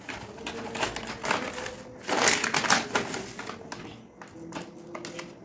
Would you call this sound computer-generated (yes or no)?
no